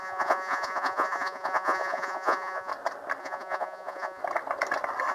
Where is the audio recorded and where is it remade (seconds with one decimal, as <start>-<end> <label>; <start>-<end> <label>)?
0.0-2.7 remade; 2.7-3.2 recorded; 3.2-4.2 remade; 4.2-5.1 recorded